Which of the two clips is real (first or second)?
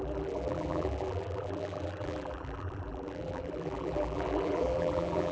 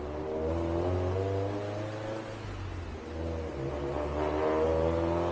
second